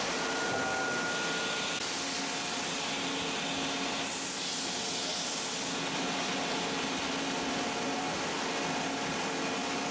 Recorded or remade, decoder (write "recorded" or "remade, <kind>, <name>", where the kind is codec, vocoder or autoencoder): recorded